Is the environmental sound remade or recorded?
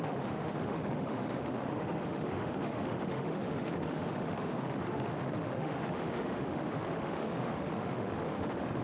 remade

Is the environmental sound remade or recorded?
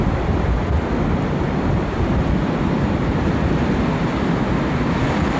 recorded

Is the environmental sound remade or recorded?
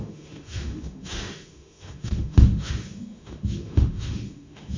remade